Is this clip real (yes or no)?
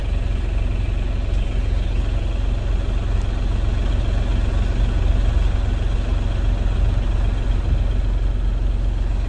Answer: yes